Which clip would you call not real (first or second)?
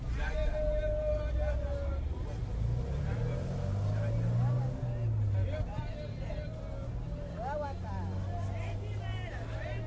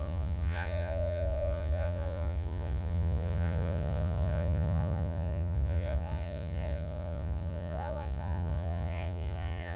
second